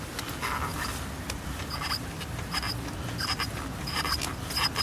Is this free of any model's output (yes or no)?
yes